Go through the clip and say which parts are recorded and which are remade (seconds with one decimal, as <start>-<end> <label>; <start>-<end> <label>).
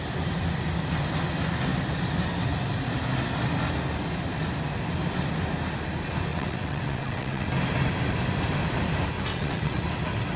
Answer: 0.0-6.3 recorded; 6.3-7.5 remade; 7.5-9.3 recorded; 9.3-9.8 remade; 9.8-10.4 recorded